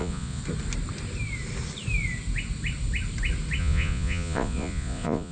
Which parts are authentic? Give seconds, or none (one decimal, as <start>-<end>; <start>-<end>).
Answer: 0.4-3.6